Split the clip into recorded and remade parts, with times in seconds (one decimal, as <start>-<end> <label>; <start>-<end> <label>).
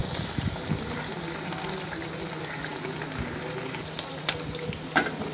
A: 0.0-1.0 remade; 1.0-5.3 recorded